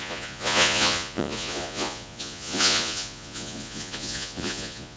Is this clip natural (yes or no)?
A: no